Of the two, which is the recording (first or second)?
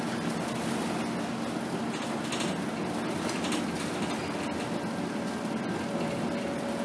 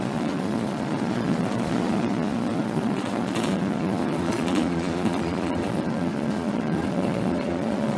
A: first